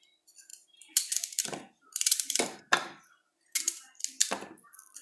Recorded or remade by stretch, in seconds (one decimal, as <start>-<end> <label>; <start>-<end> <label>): 0.0-0.5 recorded; 0.5-2.6 remade; 2.6-5.0 recorded